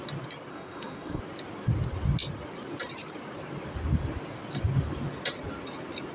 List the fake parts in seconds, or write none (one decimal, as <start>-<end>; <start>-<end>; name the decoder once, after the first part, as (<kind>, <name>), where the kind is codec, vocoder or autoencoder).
0.5-1.2 (codec, SNAC)